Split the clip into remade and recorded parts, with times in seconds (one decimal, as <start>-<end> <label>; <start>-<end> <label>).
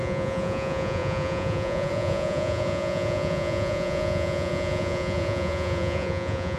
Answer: 0.0-6.6 remade